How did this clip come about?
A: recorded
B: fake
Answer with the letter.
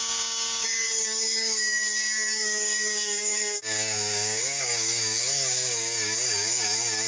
B